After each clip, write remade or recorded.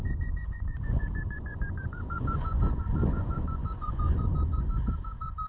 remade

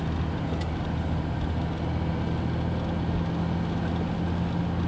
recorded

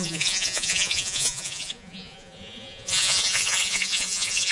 remade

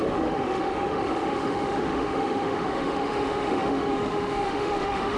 remade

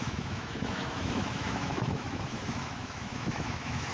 remade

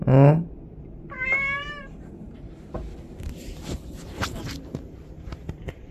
remade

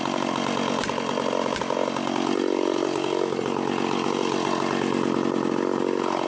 recorded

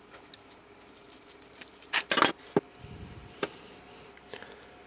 recorded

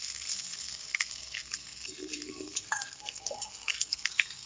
remade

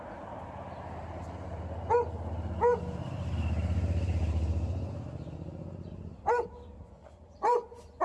recorded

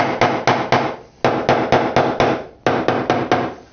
recorded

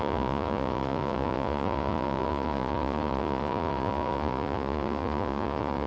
remade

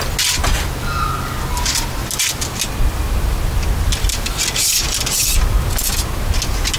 recorded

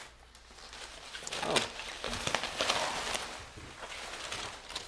recorded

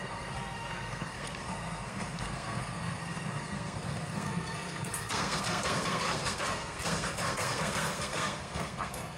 remade